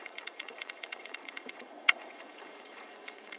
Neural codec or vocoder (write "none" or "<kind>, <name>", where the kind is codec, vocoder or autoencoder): vocoder, Vocos